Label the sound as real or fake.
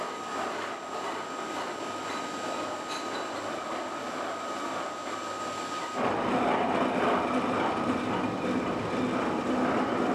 real